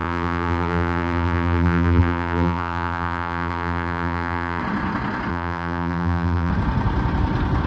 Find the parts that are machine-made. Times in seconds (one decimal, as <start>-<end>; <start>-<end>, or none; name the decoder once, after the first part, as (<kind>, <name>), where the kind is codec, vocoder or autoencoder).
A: 0.0-4.6 (vocoder, BigVGAN v2); 5.3-6.5